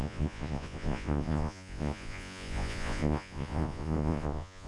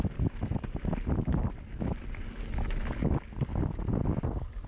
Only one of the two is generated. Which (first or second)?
first